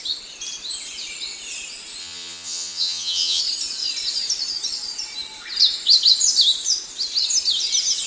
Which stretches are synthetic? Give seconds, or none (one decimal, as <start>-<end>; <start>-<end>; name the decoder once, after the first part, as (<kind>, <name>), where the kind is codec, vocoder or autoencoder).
2.0-3.4 (vocoder, HiFi-GAN)